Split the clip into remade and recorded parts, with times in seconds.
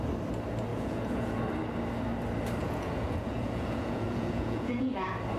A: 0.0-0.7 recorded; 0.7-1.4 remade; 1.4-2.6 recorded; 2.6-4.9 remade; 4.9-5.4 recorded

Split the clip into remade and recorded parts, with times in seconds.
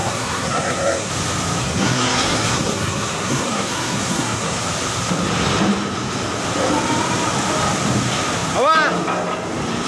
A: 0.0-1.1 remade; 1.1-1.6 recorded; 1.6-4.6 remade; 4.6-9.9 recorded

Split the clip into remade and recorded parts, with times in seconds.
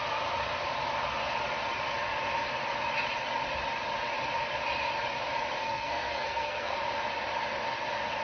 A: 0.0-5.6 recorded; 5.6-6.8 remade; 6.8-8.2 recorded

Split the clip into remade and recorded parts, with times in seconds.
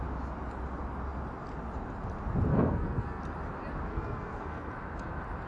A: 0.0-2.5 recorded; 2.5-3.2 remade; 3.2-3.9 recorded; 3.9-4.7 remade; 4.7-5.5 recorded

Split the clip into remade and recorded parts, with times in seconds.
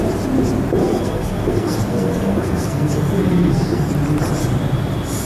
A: 0.0-0.8 recorded; 0.8-3.9 remade; 3.9-5.2 recorded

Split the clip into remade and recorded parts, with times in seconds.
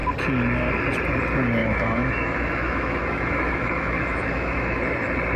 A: 0.0-1.6 recorded; 1.6-4.8 remade; 4.8-5.4 recorded